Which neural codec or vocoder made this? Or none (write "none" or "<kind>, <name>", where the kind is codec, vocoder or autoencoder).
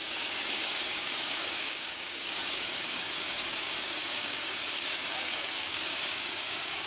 codec, DAC